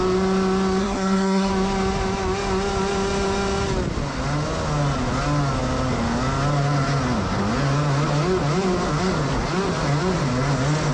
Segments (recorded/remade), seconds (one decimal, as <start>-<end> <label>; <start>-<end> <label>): 0.0-0.8 recorded; 0.8-1.5 remade; 1.5-10.9 recorded